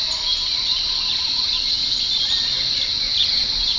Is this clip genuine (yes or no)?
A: yes